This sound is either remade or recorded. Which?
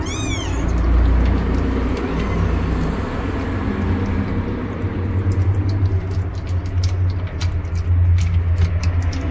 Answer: recorded